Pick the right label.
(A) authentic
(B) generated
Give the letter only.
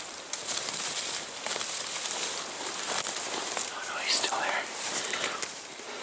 B